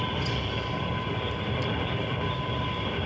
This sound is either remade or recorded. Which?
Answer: remade